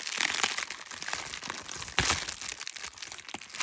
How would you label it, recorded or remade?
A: recorded